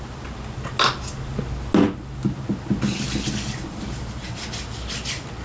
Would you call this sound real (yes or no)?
yes